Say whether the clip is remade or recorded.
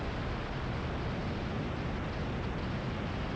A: recorded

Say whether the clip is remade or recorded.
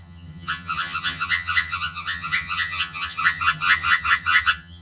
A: remade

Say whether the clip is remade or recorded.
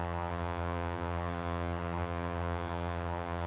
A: remade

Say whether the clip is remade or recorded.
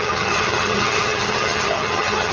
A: remade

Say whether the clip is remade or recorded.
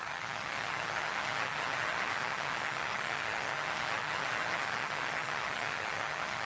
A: remade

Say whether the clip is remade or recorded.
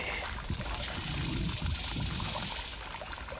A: recorded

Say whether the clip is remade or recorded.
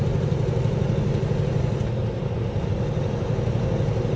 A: recorded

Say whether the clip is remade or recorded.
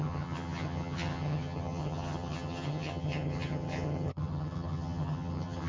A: remade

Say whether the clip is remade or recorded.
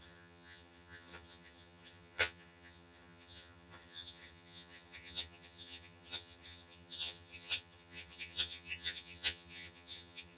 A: remade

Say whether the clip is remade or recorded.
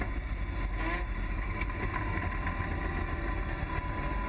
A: recorded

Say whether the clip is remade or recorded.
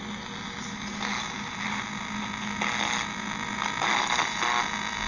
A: recorded